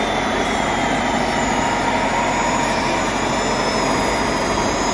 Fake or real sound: real